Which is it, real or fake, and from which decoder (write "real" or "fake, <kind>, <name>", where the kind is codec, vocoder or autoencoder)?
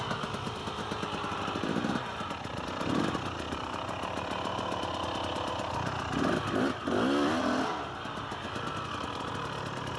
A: real